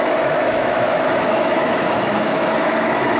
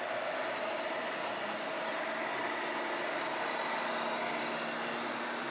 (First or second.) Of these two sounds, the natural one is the second